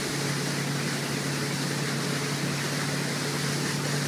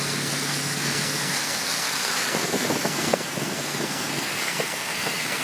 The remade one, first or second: second